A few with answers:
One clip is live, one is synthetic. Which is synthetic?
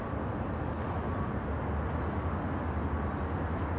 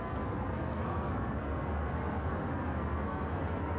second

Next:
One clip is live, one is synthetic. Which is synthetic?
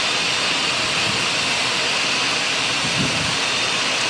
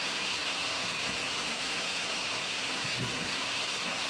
second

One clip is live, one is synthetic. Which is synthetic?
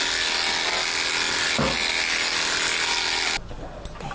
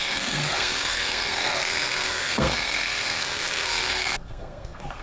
second